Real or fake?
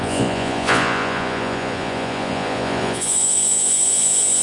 fake